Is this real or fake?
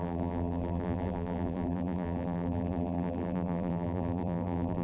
fake